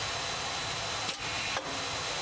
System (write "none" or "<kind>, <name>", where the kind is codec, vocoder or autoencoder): none